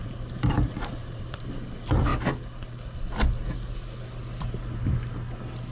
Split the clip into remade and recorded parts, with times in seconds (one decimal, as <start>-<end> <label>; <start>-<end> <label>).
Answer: 0.0-2.1 remade; 2.1-5.7 recorded